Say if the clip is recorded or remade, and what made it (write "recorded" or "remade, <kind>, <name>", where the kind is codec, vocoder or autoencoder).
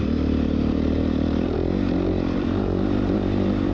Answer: remade, vocoder, BigVGAN v2